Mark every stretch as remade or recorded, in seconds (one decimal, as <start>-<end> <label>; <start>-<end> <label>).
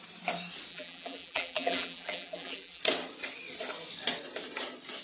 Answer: 0.0-0.7 recorded; 0.7-2.8 remade; 2.8-5.0 recorded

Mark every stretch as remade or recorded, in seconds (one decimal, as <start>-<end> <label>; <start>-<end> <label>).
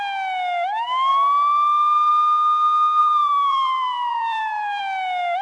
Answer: 0.0-3.0 recorded; 3.0-4.8 remade; 4.8-5.4 recorded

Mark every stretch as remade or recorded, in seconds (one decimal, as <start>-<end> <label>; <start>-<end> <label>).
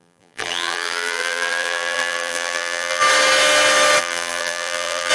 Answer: 0.0-3.0 remade; 3.0-4.0 recorded; 4.0-5.1 remade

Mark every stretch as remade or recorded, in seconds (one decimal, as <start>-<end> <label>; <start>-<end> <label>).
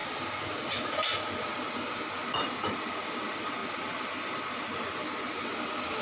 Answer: 0.0-6.0 recorded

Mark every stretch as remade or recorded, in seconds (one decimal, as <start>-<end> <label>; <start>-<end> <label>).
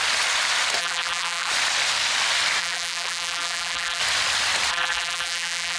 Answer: 0.0-0.8 recorded; 0.8-1.5 remade; 1.5-2.6 recorded; 2.6-4.0 remade; 4.0-4.7 recorded; 4.7-5.8 remade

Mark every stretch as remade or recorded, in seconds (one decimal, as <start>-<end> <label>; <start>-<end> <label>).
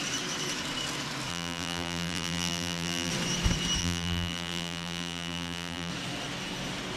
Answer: 0.0-1.3 recorded; 1.3-3.1 remade; 3.1-3.8 recorded; 3.8-5.9 remade; 5.9-7.0 recorded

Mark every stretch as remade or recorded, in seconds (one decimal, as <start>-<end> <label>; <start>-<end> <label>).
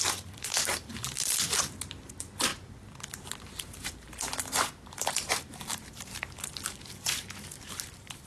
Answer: 0.0-0.9 remade; 0.9-2.0 recorded; 2.0-8.3 remade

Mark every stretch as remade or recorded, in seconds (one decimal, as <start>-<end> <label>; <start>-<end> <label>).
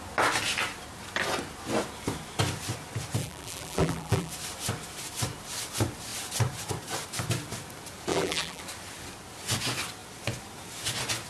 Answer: 0.0-3.2 recorded; 3.2-4.3 remade; 4.3-8.1 recorded; 8.1-8.6 remade; 8.6-11.3 recorded